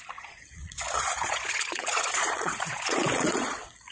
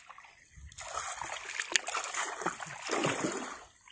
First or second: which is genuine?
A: second